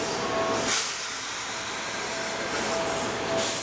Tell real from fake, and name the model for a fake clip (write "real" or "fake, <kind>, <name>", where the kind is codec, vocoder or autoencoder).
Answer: real